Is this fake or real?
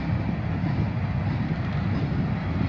real